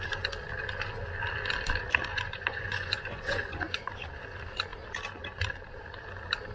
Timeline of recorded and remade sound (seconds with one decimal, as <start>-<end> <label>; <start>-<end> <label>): 0.0-2.1 recorded; 2.1-3.9 remade; 3.9-6.5 recorded